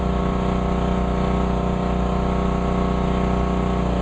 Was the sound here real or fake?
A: real